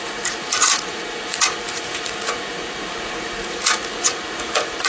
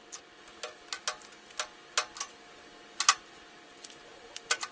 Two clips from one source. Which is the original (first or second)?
second